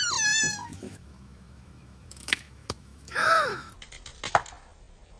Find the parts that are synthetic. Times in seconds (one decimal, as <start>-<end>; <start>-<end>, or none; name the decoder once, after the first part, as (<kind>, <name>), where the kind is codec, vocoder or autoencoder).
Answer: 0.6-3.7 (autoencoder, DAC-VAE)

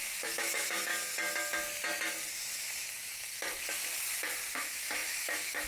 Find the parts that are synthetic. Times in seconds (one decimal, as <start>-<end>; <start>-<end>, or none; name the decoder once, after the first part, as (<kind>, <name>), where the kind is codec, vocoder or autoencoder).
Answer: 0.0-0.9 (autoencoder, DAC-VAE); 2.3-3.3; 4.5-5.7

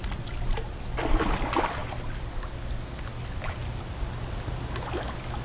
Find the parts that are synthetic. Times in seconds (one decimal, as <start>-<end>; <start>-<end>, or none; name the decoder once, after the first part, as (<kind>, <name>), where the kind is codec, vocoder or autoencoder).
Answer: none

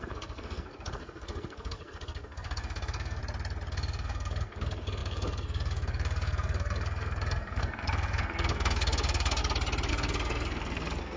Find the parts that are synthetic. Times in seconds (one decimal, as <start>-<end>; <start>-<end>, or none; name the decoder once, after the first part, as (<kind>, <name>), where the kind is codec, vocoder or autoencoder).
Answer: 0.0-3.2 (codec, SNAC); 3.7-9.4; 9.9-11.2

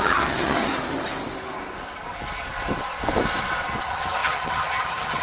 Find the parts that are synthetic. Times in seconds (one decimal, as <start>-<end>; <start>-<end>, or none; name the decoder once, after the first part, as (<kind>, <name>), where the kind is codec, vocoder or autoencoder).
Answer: 0.0-0.7 (vocoder, HiFi-GAN); 3.8-5.2

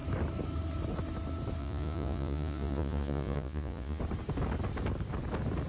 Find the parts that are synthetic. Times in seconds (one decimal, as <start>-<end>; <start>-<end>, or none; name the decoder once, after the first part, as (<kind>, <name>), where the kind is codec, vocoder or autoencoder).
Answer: 1.6-4.0 (vocoder, Vocos)

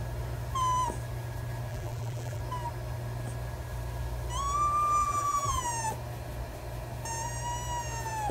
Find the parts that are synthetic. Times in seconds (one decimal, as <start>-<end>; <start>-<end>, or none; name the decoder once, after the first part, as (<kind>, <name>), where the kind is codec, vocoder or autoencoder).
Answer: 1.7-2.4 (vocoder, BigVGAN v2); 5.0-5.6

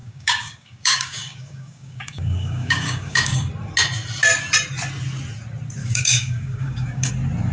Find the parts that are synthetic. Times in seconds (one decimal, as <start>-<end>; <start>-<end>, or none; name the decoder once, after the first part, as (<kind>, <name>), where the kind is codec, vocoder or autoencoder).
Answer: 0.0-3.5 (codec, DAC); 5.8-7.1